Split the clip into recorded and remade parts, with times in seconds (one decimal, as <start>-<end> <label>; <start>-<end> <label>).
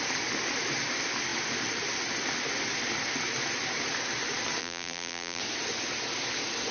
0.0-4.6 recorded; 4.6-5.4 remade; 5.4-6.7 recorded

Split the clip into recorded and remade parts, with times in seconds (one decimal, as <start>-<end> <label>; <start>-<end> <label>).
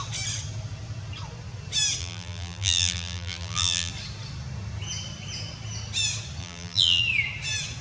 0.0-2.0 recorded; 2.0-3.9 remade; 3.9-6.4 recorded; 6.4-7.0 remade; 7.0-7.8 recorded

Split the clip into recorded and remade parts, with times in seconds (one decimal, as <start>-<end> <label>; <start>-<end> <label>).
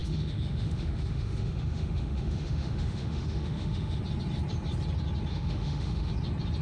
0.0-4.0 remade; 4.0-5.3 recorded; 5.3-6.1 remade; 6.1-6.6 recorded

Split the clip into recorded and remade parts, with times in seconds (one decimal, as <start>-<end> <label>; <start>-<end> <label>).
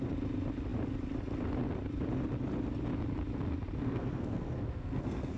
0.0-3.8 recorded; 3.8-5.4 remade